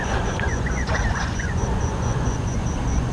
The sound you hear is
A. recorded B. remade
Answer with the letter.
B